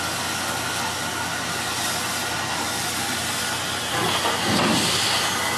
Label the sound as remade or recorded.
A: recorded